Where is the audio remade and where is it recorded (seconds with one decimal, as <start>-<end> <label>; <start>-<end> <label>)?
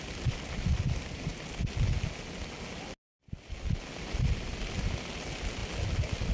0.0-6.3 recorded